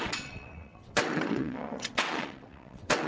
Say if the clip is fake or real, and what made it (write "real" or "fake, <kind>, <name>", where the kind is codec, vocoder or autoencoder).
fake, vocoder, WaveNeXt